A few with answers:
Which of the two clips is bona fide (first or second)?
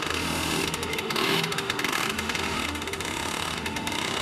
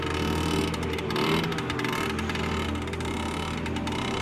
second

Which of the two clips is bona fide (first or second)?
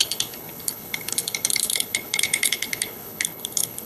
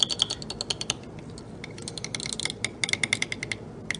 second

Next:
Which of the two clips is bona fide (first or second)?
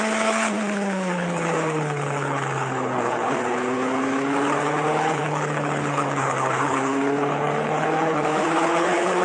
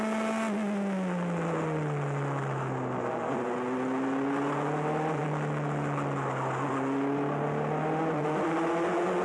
second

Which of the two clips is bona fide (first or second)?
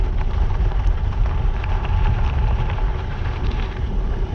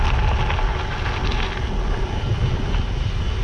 second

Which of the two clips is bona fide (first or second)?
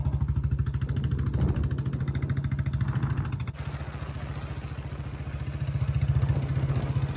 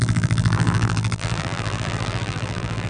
first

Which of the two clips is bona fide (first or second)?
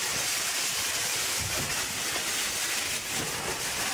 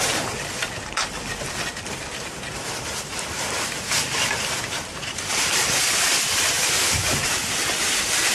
first